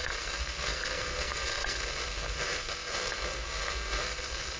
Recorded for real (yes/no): no